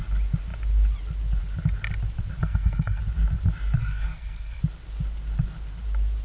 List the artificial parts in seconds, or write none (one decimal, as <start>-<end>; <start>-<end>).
2.4-3.0; 3.8-4.6